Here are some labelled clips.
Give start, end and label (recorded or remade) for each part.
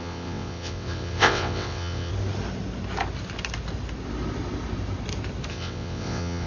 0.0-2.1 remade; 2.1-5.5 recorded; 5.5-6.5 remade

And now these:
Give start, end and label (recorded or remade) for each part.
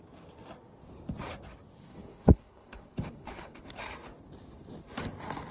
0.0-1.9 recorded; 1.9-3.7 remade; 3.7-5.5 recorded